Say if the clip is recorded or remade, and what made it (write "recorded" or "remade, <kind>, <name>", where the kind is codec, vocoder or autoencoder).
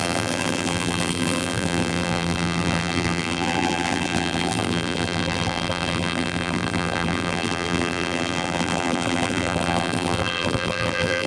remade, vocoder, BigVGAN v2